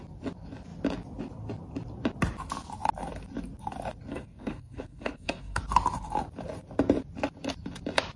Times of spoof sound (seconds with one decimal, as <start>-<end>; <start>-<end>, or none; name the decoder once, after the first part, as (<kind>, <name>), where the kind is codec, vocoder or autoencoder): 4.1-5.6 (codec, SNAC)